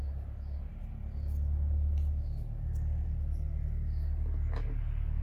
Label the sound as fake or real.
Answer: real